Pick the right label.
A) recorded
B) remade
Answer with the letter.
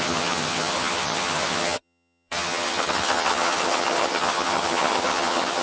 B